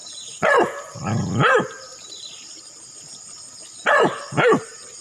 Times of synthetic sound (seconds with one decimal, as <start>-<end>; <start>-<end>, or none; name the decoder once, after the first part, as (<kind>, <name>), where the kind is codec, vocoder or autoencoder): none